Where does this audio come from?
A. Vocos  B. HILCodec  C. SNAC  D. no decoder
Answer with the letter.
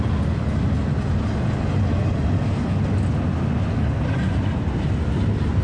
D